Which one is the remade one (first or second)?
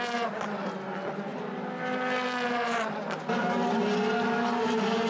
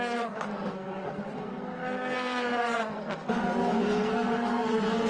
second